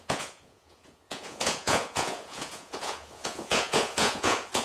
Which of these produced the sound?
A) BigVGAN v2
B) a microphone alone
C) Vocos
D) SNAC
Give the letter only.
C